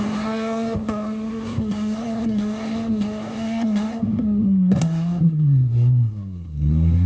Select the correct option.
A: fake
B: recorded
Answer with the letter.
A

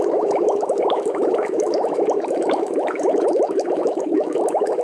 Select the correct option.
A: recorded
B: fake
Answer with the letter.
B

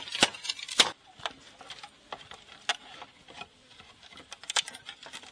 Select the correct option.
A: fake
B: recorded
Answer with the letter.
B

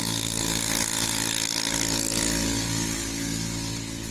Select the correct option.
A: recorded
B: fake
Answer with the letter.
A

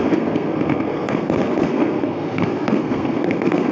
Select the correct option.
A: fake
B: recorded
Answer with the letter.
A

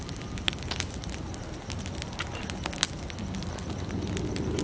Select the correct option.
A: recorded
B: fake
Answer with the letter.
A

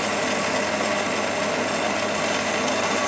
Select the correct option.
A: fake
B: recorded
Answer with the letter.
B